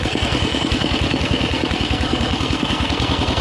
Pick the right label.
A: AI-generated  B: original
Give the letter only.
A